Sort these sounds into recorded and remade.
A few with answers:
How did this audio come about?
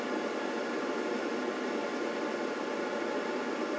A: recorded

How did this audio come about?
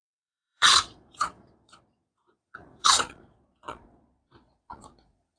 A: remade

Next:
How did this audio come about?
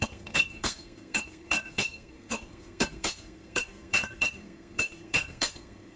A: remade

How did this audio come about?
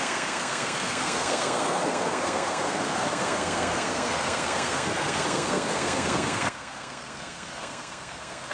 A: remade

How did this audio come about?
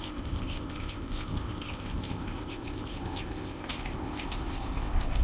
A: remade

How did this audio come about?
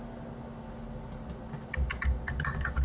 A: recorded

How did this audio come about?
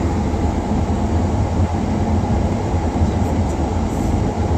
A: remade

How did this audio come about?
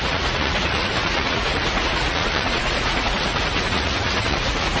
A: remade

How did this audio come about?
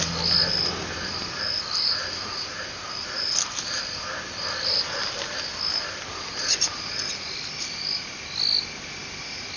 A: recorded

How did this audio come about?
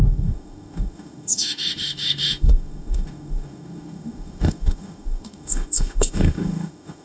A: remade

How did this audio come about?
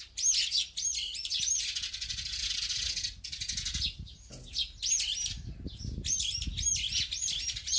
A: recorded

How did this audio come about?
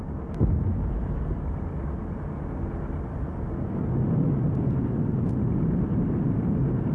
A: recorded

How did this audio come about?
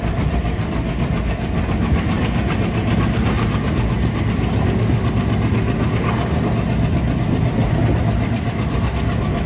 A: recorded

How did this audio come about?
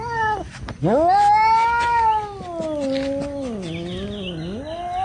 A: recorded